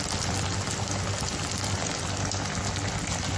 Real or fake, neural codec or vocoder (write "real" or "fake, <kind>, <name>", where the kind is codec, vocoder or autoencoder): real